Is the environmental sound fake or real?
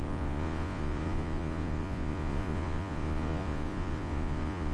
fake